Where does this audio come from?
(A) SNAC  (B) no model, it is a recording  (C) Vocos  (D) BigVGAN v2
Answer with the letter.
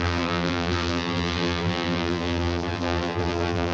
D